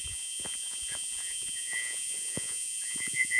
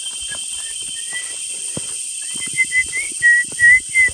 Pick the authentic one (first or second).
second